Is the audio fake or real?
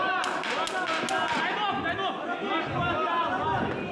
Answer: real